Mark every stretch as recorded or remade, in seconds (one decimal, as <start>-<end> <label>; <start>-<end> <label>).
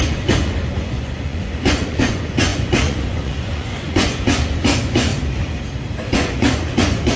0.0-5.1 remade; 5.1-6.0 recorded; 6.0-7.2 remade